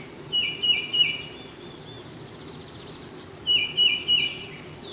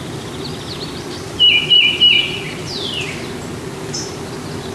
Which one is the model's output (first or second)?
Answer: second